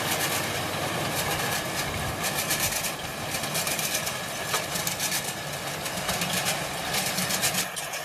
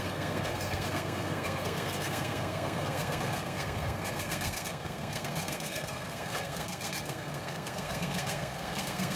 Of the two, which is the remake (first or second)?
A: second